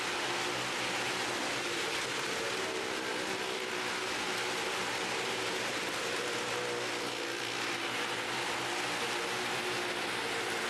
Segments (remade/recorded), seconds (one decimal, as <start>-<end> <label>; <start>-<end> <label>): 0.0-10.7 recorded